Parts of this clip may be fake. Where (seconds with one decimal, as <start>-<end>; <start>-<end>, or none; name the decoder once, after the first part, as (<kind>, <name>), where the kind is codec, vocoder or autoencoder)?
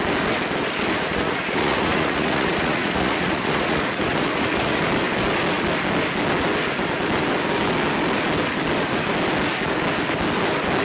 1.1-4.8 (vocoder, Vocos)